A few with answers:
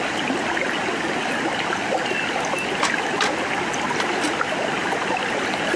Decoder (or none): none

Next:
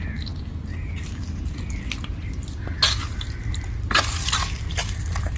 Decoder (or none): none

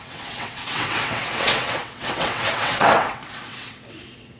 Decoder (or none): vocoder, WaveNeXt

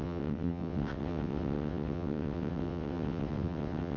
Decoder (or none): vocoder, WaveNeXt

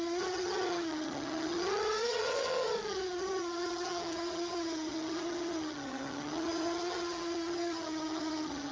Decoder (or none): vocoder, HiFi-GAN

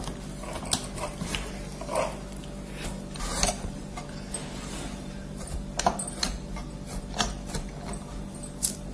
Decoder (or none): none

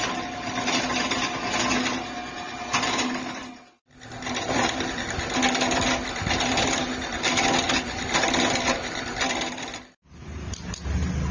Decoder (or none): none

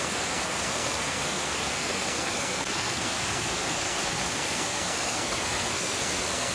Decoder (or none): codec, SNAC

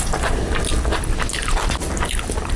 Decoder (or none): none